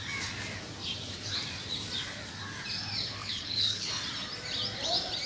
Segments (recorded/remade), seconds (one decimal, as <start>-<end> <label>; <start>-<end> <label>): 0.0-3.2 recorded; 3.2-3.9 remade; 3.9-5.3 recorded